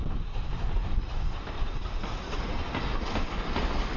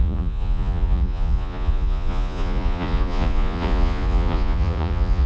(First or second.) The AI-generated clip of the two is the second